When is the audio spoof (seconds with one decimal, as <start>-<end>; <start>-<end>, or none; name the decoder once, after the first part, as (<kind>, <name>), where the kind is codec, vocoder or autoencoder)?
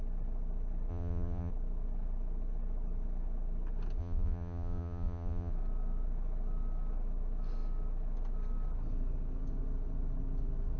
0.9-1.5 (vocoder, Vocos); 4.0-5.5